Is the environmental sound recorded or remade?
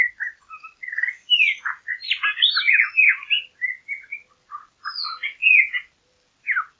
recorded